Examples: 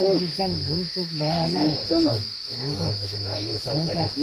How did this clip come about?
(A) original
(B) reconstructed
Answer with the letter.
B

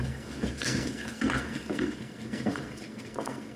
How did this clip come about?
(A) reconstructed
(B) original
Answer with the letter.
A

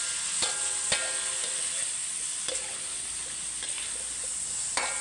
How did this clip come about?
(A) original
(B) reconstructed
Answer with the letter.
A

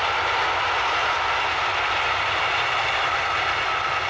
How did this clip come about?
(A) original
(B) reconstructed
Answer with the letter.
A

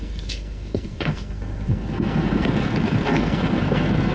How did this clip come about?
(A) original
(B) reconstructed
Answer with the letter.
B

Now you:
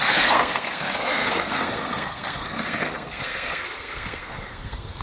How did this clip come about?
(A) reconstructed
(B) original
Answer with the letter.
A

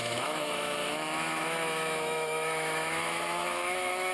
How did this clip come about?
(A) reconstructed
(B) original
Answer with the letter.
A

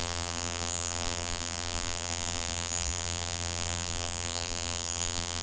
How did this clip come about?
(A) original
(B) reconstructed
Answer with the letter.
B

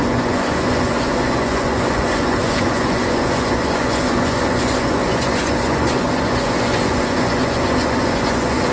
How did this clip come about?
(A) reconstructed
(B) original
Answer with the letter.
A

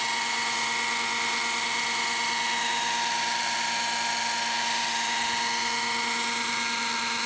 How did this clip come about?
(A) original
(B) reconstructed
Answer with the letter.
A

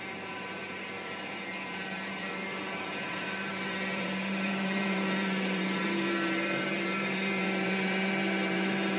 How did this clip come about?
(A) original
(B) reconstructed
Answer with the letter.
B